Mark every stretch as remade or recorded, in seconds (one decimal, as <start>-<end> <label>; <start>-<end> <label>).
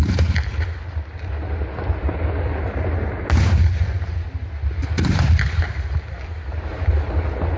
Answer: 0.0-4.8 recorded; 4.8-5.6 remade; 5.6-7.6 recorded